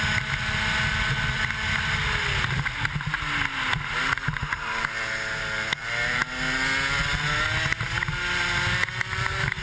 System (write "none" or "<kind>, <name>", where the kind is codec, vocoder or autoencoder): none